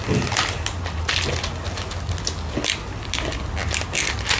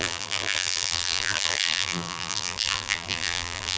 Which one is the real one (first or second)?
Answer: first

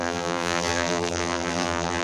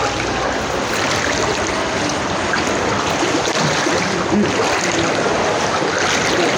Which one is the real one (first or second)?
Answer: second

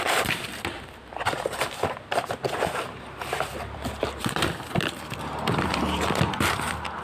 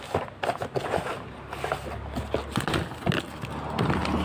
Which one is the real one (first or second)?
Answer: second